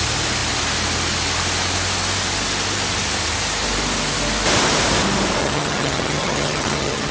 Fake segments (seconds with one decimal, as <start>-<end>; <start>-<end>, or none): 5.4-7.1